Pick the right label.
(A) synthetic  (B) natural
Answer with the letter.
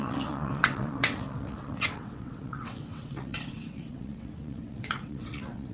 A